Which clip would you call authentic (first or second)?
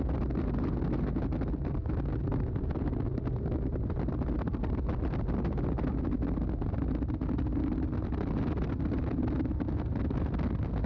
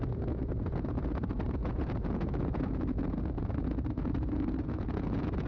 first